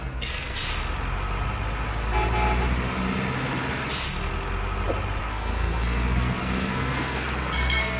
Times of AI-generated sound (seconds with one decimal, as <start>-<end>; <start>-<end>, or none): 0.0-0.6; 5.2-8.0